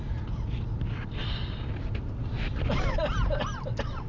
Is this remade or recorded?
recorded